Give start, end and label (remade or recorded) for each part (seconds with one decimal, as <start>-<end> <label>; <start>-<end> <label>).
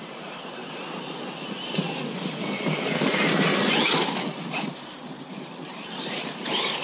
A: 0.0-0.6 remade; 0.6-2.4 recorded; 2.4-3.5 remade; 3.5-4.6 recorded; 4.6-6.8 remade